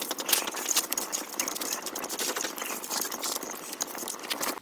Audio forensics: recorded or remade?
recorded